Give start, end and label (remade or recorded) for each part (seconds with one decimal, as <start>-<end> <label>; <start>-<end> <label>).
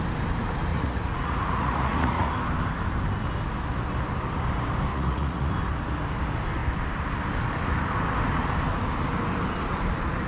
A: 0.0-0.7 recorded; 0.7-2.3 remade; 2.3-4.9 recorded; 4.9-5.5 remade; 5.5-10.3 recorded